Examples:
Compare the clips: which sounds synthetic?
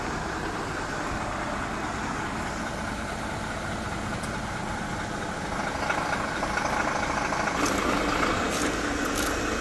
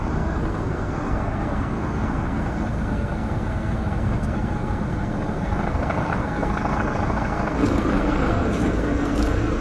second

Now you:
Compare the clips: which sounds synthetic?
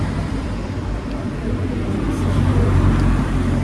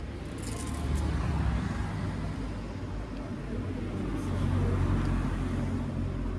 first